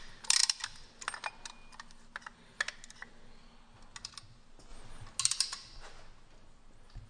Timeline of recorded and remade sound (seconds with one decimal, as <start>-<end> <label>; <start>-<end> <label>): 0.0-7.1 recorded